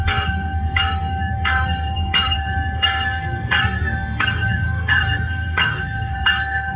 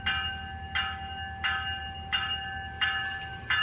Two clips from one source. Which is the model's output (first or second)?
first